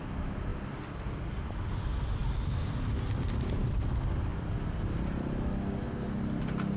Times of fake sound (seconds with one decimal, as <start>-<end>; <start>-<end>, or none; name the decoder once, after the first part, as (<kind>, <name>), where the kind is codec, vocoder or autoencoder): 0.5-1.5 (vocoder, BigVGAN v2); 2.2-3.6

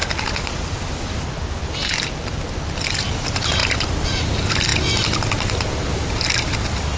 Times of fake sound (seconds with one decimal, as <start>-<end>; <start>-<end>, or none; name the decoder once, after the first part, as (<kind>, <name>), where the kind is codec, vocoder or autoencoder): 3.6-4.2 (vocoder, BigVGAN v2)

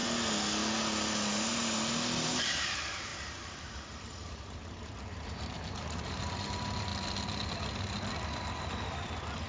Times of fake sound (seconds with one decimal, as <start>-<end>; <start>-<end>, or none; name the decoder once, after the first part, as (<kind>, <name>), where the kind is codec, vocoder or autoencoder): 2.4-6.9 (vocoder, BigVGAN v2); 8.2-9.5

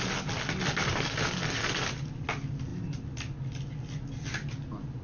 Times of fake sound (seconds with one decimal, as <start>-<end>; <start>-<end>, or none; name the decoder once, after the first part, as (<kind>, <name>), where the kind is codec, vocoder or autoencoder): none

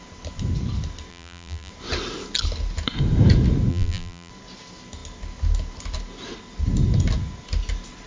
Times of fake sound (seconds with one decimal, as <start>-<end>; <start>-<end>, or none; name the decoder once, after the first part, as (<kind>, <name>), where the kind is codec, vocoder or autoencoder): 1.1-1.7 (vocoder, BigVGAN v2); 3.7-4.3

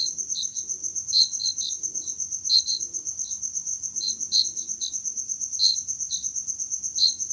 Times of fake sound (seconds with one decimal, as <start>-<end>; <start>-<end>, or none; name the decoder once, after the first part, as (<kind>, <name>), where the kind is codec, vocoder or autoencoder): 0.0-3.7 (vocoder, BigVGAN v2)

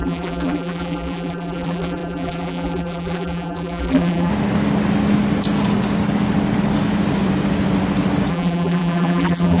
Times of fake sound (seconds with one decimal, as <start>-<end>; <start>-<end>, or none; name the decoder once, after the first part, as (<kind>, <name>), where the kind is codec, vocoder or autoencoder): 0.0-4.3 (vocoder, BigVGAN v2); 8.3-9.6